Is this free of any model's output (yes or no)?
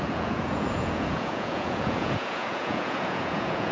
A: no